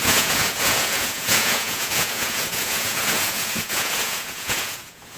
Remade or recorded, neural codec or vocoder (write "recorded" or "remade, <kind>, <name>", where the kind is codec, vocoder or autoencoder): remade, vocoder, Vocos